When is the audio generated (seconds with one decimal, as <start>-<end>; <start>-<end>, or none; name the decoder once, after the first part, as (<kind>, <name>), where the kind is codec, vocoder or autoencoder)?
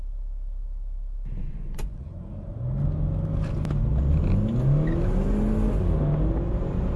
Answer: 1.4-2.2 (vocoder, Vocos)